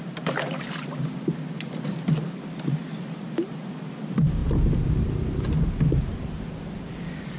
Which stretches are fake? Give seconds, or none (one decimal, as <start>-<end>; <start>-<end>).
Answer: none